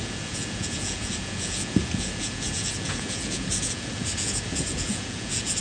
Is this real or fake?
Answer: fake